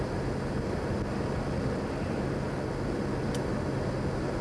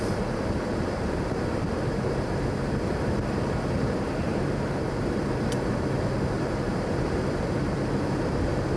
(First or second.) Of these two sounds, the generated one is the second